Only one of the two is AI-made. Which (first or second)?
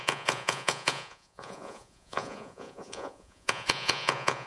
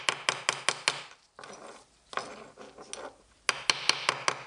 first